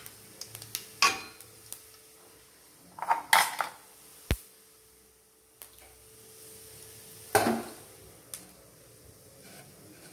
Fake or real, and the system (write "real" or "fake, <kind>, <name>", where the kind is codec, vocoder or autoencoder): real